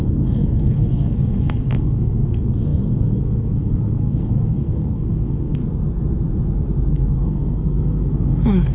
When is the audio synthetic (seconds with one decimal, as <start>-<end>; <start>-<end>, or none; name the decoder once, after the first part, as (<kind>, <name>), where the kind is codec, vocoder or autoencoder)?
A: 0.0-5.6 (codec, SNAC); 6.9-8.7